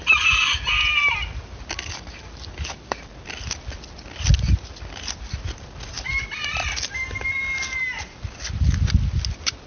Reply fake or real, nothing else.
real